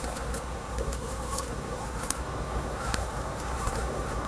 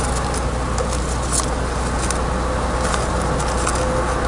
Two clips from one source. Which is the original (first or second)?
second